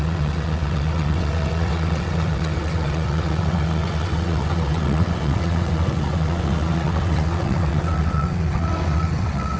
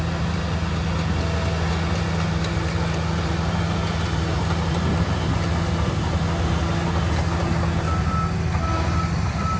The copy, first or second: first